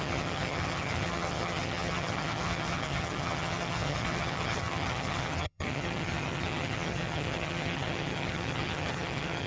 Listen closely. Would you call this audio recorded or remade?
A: remade